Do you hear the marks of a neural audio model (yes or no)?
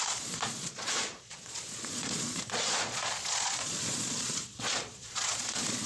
yes